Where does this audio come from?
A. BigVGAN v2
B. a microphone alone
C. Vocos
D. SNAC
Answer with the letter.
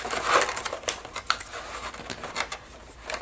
B